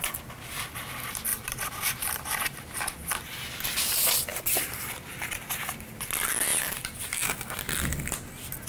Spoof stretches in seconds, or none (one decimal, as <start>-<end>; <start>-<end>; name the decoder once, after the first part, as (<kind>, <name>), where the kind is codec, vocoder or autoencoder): 1.3-3.2 (vocoder, BigVGAN v2); 6.5-7.3